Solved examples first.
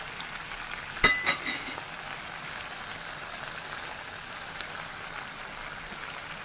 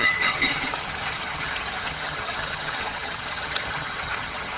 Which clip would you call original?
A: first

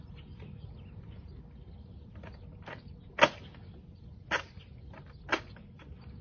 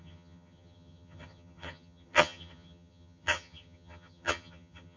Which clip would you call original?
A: first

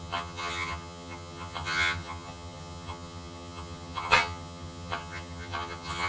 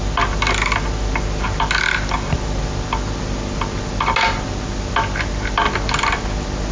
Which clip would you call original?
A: second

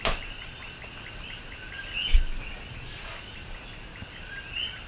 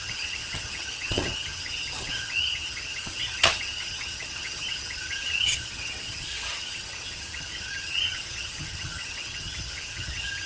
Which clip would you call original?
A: first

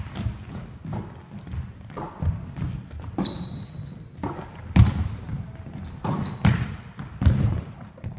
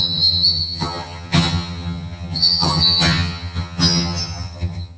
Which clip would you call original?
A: first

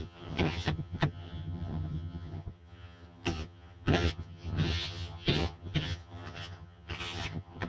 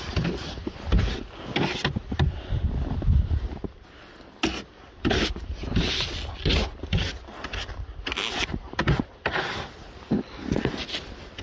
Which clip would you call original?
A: second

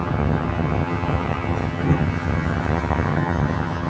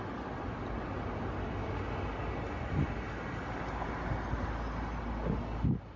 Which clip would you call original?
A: second